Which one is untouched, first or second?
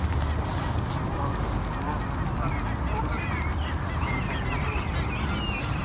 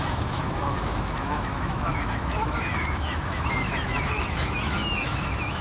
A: first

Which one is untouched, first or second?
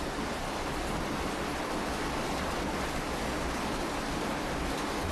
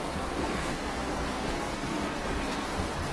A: first